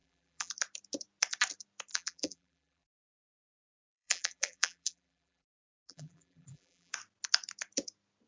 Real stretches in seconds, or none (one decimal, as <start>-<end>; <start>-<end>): 0.5-1.9; 6.9-8.3

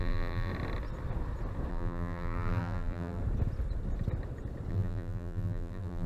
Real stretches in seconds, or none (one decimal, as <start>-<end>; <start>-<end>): 0.5-1.7; 3.2-4.7